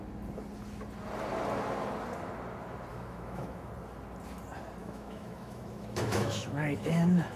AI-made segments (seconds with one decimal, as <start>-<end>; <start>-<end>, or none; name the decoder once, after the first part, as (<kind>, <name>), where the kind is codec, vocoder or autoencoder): 2.9-3.7 (autoencoder, DAC-VAE); 4.8-7.4